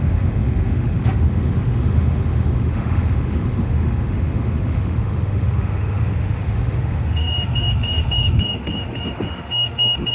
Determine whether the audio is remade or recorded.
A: remade